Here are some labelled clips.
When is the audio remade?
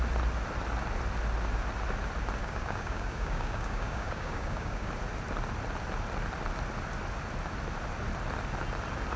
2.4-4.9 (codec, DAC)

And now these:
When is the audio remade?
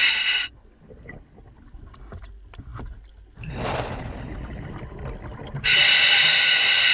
none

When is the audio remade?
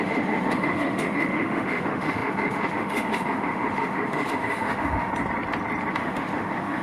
0.0-5.1 (autoencoder, DAC-VAE); 5.9-6.8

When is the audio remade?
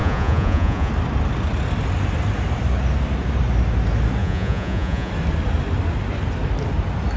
0.0-0.9 (vocoder, Vocos); 4.2-5.1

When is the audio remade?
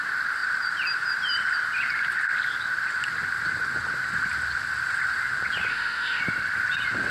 5.7-6.2 (autoencoder, DAC-VAE)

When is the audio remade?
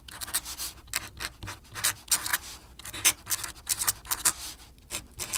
2.3-3.2 (vocoder, BigVGAN v2)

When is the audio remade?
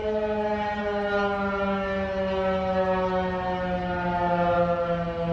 none